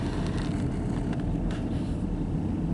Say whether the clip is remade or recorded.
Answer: recorded